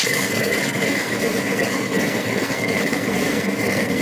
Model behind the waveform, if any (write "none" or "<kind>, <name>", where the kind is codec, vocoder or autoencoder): codec, SNAC